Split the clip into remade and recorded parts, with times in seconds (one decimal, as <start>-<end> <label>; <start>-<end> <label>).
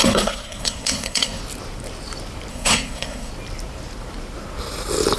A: 0.0-1.4 remade; 1.4-2.5 recorded; 2.5-3.3 remade; 3.3-5.2 recorded